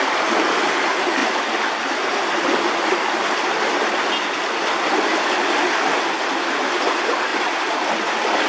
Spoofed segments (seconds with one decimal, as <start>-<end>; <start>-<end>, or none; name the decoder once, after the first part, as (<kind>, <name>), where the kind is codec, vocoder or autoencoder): none

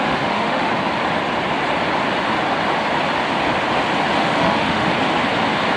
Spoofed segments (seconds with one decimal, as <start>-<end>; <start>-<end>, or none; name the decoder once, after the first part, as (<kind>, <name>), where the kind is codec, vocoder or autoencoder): 0.0-0.7 (autoencoder, DAC-VAE); 4.2-4.9

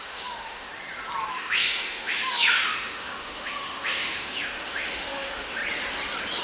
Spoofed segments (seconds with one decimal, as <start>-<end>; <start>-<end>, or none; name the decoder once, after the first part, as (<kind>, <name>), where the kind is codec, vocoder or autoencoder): 0.0-0.7 (autoencoder, DAC-VAE); 1.3-5.6

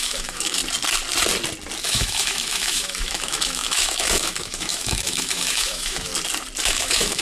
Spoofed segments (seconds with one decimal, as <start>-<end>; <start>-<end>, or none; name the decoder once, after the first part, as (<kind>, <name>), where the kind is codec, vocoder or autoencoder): 0.0-0.6 (autoencoder, DAC-VAE); 1.8-6.1; 6.6-7.2